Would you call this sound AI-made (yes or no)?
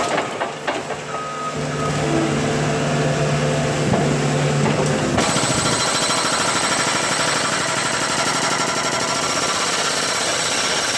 no